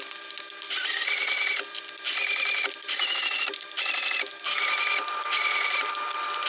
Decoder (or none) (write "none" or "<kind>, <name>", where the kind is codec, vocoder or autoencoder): vocoder, BigVGAN v2